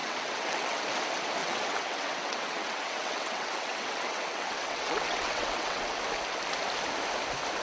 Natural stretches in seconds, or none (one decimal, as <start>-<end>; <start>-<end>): 0.8-1.4; 6.0-7.6